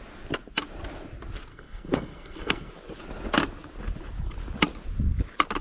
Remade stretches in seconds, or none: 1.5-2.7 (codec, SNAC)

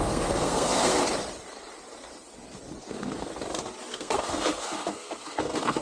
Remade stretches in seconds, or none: 0.0-1.0 (codec, SNAC); 2.9-3.3; 3.9-5.8

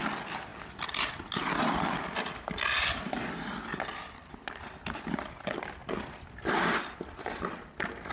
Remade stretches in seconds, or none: none

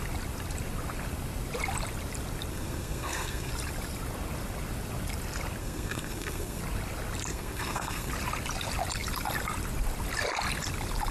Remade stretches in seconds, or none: 2.5-3.5 (codec, SNAC); 5.6-6.6; 7.3-8.1

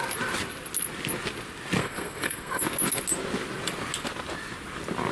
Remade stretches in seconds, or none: 1.8-2.6 (codec, SNAC)